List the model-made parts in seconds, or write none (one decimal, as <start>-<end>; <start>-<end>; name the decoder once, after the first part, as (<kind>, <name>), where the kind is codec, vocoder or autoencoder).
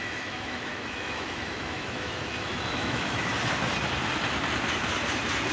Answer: 0.0-3.3 (autoencoder, DAC-VAE)